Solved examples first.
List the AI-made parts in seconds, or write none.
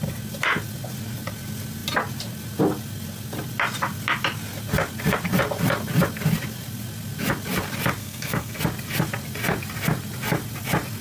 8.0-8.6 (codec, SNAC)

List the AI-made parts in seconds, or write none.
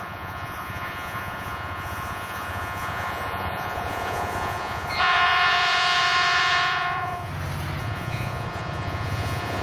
0.0-7.3 (vocoder, Vocos); 7.8-9.6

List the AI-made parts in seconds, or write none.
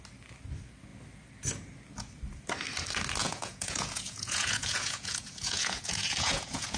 3.2-6.8 (vocoder, Vocos)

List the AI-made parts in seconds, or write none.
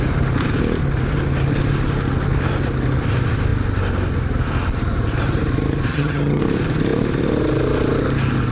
5.9-6.4 (vocoder, HiFi-GAN)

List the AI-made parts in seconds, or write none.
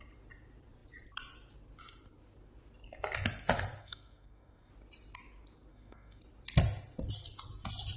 3.8-4.7 (codec, SNAC); 5.7-6.2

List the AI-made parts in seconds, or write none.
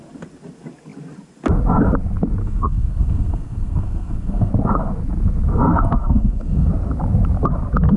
2.4-4.5 (codec, SNAC); 6.0-6.7